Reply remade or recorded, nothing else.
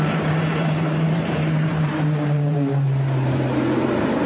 remade